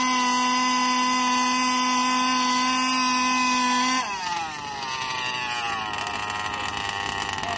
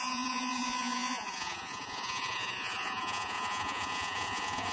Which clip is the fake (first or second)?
second